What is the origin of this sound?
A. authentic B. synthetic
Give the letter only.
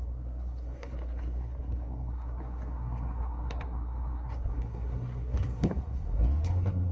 B